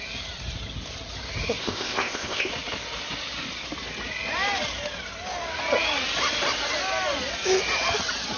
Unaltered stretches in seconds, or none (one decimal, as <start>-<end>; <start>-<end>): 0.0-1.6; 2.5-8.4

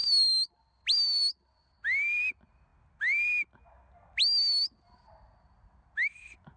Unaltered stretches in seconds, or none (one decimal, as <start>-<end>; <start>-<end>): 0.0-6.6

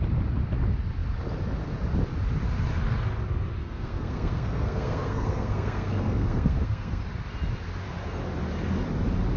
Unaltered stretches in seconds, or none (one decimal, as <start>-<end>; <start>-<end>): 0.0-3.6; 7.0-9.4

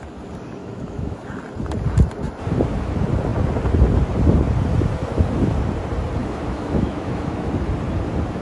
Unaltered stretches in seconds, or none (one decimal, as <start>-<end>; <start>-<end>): 0.0-0.6; 1.4-6.2; 7.5-8.4

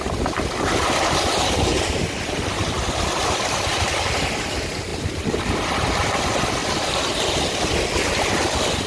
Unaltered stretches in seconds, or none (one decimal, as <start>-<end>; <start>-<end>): 0.0-1.7; 2.5-4.9; 6.1-6.6; 7.3-8.9

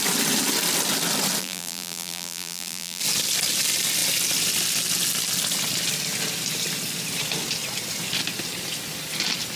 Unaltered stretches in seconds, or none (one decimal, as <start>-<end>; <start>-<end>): 0.0-1.4; 3.0-9.6

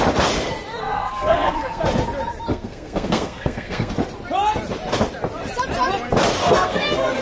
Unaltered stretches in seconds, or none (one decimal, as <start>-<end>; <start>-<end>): 0.0-0.7; 1.8-2.5; 3.9-6.4